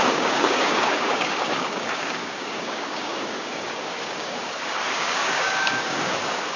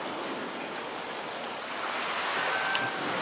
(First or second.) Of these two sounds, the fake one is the first